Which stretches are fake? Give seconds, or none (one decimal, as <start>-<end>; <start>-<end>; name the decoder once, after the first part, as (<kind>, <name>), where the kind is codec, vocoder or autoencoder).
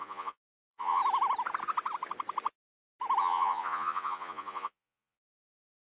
0.0-1.0 (vocoder, Vocos); 3.2-5.8